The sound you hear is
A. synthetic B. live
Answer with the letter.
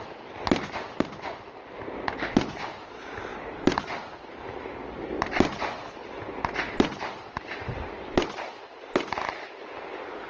B